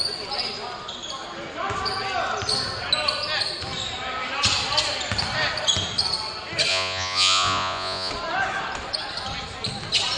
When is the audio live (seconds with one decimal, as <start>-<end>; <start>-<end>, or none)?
0.0-6.7; 8.1-10.2